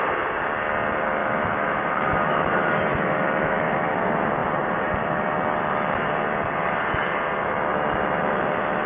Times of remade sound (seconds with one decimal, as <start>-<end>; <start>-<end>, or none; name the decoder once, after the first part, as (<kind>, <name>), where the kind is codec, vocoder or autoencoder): 1.2-4.0 (autoencoder, DAC-VAE)

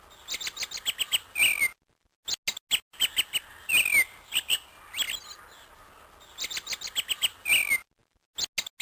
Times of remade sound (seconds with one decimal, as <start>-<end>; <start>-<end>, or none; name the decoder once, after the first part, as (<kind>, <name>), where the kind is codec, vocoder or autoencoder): none

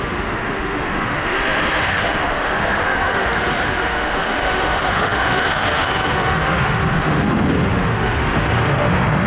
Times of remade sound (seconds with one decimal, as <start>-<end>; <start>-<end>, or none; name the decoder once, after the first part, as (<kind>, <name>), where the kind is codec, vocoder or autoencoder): 0.0-9.3 (autoencoder, DAC-VAE)